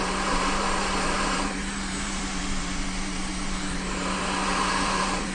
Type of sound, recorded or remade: remade